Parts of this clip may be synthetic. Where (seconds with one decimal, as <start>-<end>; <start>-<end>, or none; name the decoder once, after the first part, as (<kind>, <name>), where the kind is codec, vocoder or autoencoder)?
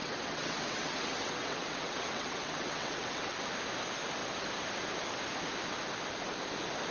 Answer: 0.0-3.4 (vocoder, WaveNeXt)